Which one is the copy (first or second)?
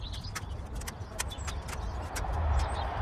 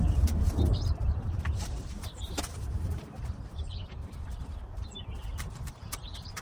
second